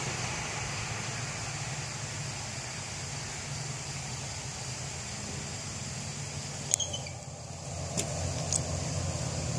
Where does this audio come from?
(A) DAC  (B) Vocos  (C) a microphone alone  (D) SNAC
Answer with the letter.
C